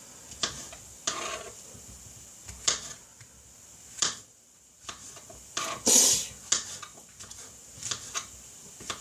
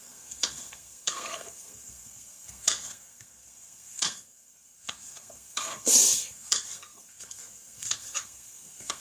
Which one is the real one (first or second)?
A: first